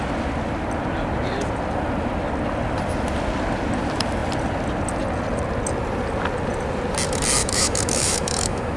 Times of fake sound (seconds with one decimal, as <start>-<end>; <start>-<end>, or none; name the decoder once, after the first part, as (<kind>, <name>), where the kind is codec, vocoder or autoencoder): 7.4-8.8 (autoencoder, DAC-VAE)